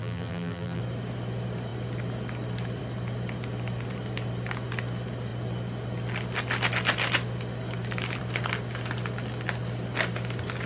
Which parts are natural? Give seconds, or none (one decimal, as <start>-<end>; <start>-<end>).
0.8-10.7